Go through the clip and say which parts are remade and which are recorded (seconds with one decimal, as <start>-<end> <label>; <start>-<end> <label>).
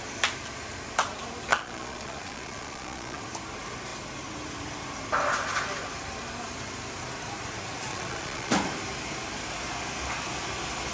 0.0-1.5 recorded; 1.5-3.2 remade; 3.2-7.9 recorded; 7.9-8.5 remade; 8.5-10.9 recorded